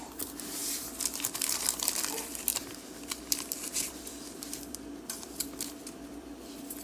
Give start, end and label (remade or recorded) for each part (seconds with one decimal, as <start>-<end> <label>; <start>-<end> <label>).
0.0-6.8 remade